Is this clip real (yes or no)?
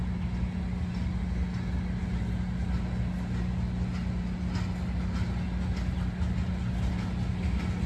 yes